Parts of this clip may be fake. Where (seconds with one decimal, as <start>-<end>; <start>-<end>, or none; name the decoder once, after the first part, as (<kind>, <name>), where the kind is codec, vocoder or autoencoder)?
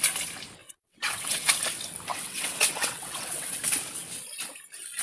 0.6-1.5 (vocoder, WaveNeXt); 2.1-3.6